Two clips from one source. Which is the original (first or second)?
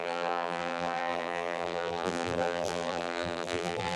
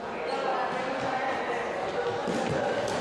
second